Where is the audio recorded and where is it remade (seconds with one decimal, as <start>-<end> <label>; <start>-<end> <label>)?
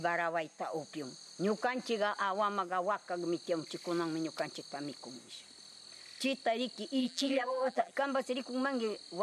0.0-7.0 recorded; 7.0-7.9 remade; 7.9-9.2 recorded